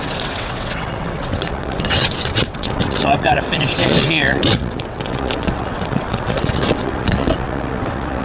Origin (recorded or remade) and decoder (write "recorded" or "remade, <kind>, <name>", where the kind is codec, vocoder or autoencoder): remade, vocoder, WaveNeXt